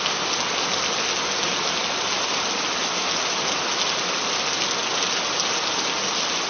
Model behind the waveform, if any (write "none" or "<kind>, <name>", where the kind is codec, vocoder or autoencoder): none